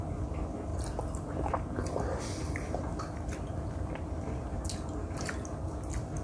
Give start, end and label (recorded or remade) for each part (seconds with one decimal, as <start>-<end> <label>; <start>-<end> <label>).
0.0-6.2 recorded